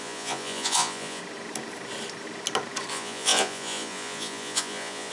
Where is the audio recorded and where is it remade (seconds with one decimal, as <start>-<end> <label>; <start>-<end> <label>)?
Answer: 0.0-1.2 remade; 1.2-2.9 recorded; 2.9-5.1 remade